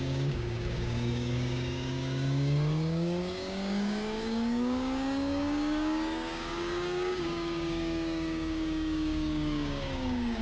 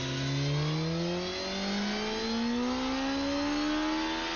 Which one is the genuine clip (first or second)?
second